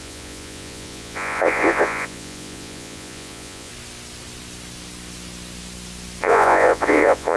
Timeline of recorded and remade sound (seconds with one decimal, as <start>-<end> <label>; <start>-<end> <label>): 0.0-3.7 remade; 3.7-6.2 recorded; 6.2-7.4 remade